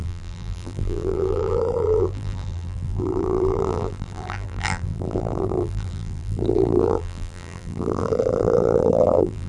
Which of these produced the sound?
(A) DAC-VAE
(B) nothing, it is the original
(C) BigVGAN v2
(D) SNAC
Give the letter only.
C